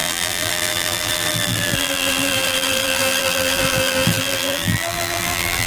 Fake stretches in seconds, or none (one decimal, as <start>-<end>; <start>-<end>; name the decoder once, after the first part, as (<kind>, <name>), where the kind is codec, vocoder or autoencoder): 0.0-5.7 (vocoder, BigVGAN v2)